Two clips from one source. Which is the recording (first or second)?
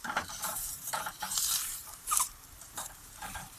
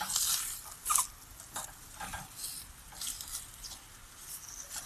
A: second